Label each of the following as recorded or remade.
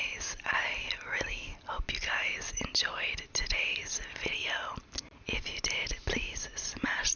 recorded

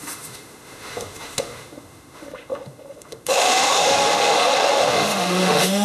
remade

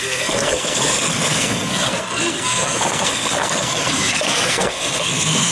remade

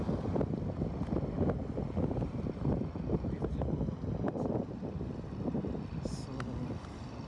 recorded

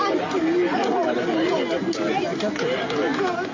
recorded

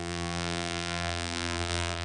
remade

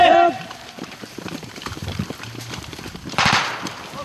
remade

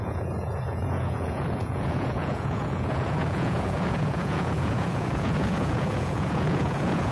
remade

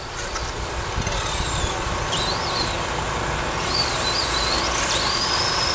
recorded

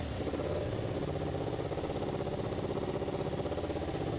recorded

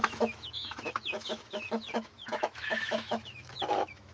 remade